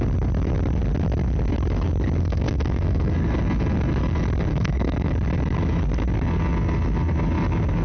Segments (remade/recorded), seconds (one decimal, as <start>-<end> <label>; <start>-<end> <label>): 0.0-2.2 recorded; 2.2-3.1 remade; 3.1-4.5 recorded; 4.5-5.1 remade; 5.1-7.8 recorded

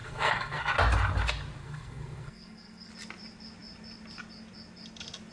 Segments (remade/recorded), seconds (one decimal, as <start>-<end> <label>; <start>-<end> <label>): 0.0-0.7 remade; 0.7-1.6 recorded; 1.6-2.9 remade; 2.9-5.3 recorded

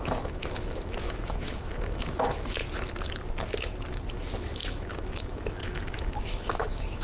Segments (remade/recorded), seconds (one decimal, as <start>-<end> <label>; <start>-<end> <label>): 0.0-2.6 remade; 2.6-4.1 recorded; 4.1-7.0 remade

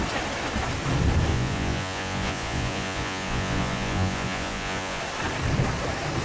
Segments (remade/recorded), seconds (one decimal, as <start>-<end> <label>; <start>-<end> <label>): 0.0-1.3 recorded; 1.3-5.0 remade; 5.0-6.2 recorded